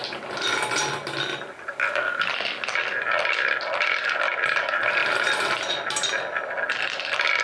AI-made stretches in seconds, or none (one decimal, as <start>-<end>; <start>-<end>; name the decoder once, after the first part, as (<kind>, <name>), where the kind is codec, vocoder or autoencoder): none